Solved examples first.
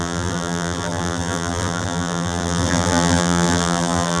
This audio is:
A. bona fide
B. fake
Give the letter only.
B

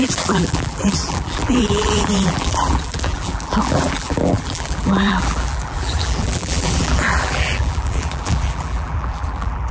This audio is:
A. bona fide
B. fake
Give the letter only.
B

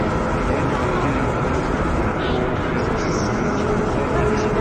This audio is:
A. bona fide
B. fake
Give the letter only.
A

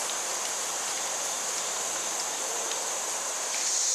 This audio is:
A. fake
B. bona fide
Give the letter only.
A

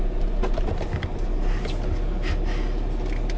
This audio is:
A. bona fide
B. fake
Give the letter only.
A